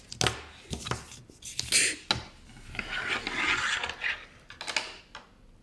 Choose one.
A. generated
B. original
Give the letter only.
B